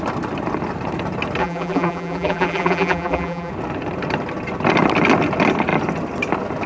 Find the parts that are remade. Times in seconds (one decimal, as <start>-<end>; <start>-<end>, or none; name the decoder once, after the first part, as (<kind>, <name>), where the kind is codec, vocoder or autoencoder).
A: 1.4-3.5 (vocoder, BigVGAN v2)

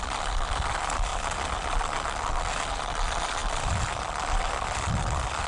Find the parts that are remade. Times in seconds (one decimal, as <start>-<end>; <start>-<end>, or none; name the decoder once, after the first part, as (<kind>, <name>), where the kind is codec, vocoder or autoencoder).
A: 0.0-1.1 (vocoder, BigVGAN v2); 2.7-5.5

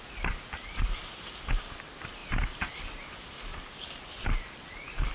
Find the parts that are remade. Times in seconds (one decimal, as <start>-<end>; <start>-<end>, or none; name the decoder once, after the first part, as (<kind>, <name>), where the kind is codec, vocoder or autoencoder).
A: 3.5-4.1 (vocoder, BigVGAN v2)

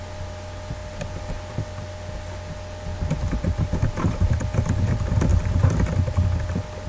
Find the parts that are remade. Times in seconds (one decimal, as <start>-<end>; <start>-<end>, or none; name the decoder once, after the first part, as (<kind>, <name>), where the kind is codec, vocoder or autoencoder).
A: 2.9-4.4 (vocoder, BigVGAN v2); 5.3-5.8